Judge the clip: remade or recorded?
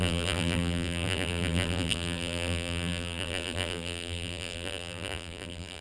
remade